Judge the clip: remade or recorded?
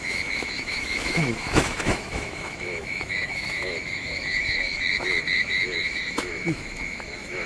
remade